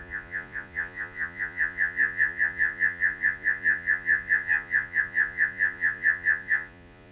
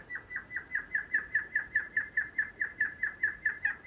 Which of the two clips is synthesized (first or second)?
first